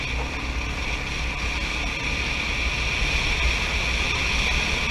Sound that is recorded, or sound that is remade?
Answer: recorded